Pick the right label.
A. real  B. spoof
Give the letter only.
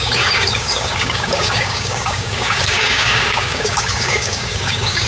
B